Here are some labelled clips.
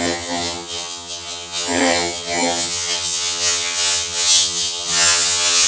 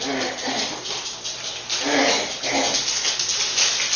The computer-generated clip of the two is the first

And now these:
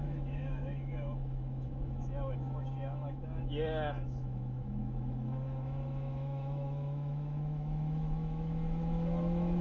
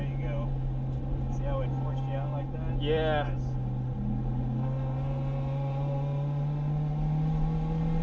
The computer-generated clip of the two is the first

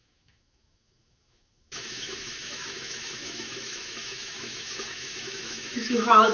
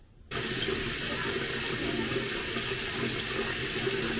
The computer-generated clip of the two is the first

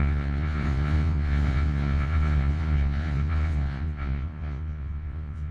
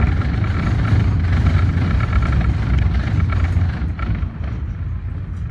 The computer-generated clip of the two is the first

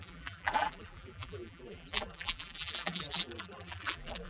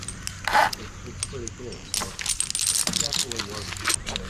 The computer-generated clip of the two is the first